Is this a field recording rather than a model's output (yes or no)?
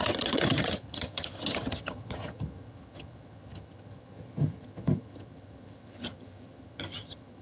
no